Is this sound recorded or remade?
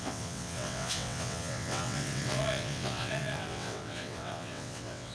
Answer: remade